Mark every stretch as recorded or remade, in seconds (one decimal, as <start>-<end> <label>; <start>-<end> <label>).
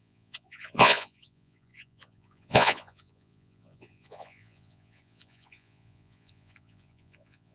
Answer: 0.0-7.5 remade